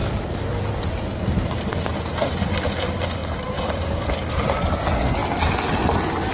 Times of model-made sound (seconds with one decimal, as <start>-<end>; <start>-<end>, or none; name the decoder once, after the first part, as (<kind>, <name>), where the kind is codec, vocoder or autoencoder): 3.2-4.3 (vocoder, BigVGAN v2)